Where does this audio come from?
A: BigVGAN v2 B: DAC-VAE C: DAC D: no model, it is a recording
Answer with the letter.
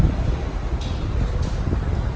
D